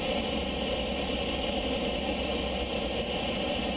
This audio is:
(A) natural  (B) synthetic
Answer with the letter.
A